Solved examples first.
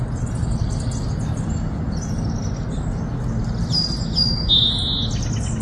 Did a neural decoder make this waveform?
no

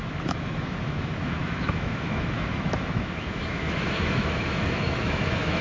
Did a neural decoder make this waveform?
yes